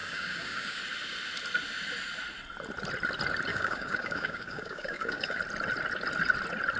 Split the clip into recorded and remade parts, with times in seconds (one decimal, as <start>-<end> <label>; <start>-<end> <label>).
0.0-0.8 remade; 0.8-3.5 recorded; 3.5-5.4 remade; 5.4-6.8 recorded